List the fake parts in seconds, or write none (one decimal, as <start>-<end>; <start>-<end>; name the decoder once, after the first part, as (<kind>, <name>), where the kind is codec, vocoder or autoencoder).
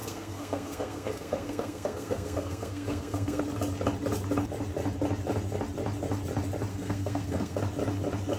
0.0-3.4 (codec, SNAC); 6.7-7.6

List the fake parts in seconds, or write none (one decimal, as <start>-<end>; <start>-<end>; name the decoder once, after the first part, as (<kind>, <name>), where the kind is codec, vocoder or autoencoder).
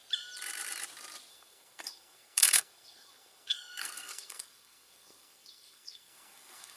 1.3-6.8 (codec, SNAC)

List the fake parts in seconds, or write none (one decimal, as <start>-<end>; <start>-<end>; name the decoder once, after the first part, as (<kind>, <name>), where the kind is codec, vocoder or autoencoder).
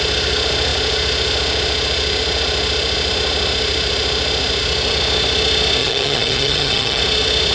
5.8-7.0 (vocoder, HiFi-GAN)